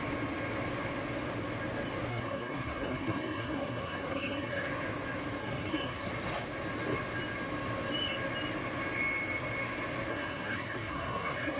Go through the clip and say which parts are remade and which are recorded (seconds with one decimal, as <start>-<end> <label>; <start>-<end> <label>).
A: 0.0-2.1 recorded; 2.1-4.7 remade; 4.7-5.4 recorded; 5.4-6.1 remade; 6.1-10.1 recorded; 10.1-11.6 remade